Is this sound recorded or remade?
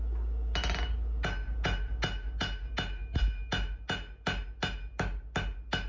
recorded